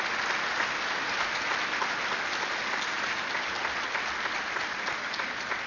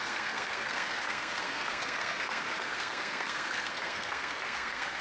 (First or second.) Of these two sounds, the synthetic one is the second